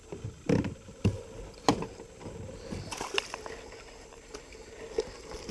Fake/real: real